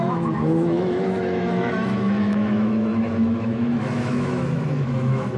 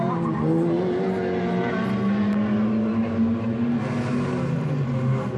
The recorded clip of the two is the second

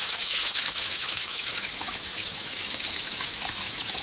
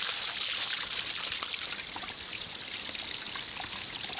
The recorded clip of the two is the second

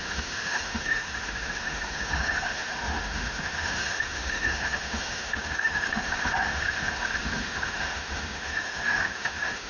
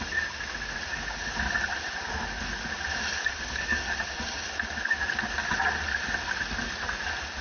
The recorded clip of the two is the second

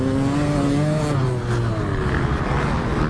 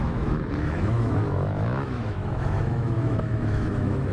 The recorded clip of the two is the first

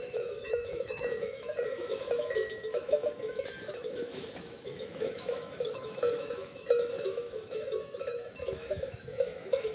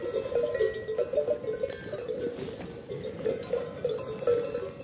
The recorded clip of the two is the second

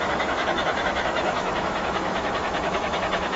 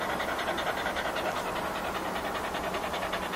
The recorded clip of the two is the second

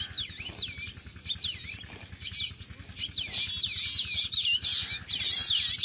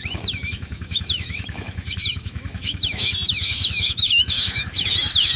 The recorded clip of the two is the first